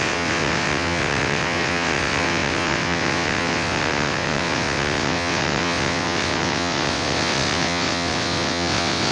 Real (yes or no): no